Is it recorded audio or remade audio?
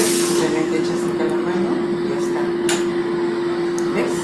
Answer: recorded